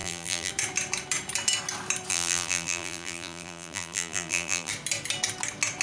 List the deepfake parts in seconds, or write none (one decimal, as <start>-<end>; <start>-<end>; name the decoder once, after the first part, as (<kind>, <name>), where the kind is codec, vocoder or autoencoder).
0.0-0.5 (vocoder, BigVGAN v2); 2.1-4.7